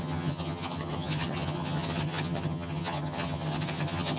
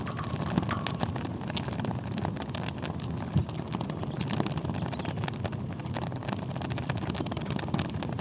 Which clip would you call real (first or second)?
second